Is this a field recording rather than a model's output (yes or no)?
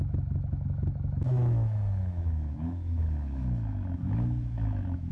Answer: no